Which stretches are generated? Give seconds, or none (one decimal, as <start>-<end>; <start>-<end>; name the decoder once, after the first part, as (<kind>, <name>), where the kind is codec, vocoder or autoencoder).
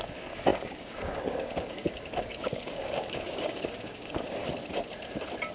0.0-4.4 (codec, DAC)